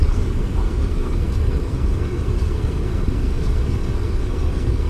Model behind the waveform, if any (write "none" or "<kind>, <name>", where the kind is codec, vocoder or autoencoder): codec, SNAC